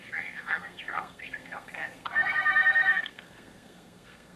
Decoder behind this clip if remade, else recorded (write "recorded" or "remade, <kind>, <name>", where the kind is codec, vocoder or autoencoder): remade, codec, SNAC